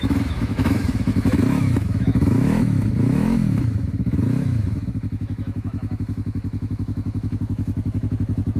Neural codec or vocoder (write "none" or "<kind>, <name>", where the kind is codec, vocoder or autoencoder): autoencoder, DAC-VAE